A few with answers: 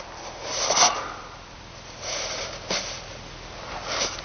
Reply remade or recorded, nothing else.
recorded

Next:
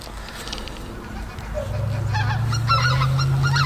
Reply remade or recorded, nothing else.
recorded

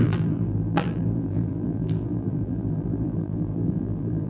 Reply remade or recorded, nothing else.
remade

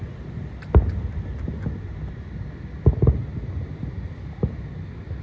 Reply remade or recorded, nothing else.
recorded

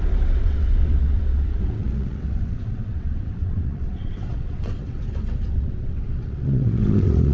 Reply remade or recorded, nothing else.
remade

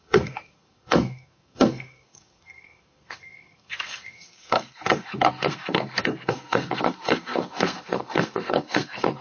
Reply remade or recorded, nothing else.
remade